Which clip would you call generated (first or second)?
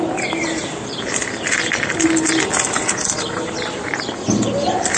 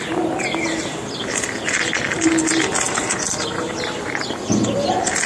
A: first